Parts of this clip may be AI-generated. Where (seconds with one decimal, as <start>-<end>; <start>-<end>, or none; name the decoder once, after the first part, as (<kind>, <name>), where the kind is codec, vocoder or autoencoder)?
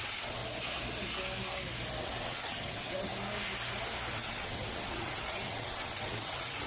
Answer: 0.0-0.4 (vocoder, WaveNeXt); 2.0-3.1; 4.1-6.7